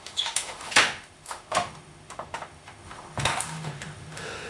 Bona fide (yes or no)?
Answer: no